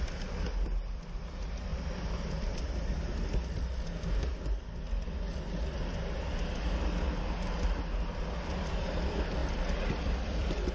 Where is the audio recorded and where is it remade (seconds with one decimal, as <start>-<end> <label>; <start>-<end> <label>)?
0.0-1.7 recorded; 1.7-2.8 remade; 2.8-9.4 recorded; 9.4-10.7 remade